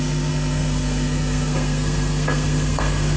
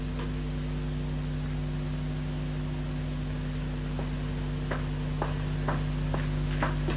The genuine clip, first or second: second